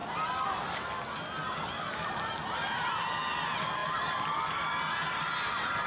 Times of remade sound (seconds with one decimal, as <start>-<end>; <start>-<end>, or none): none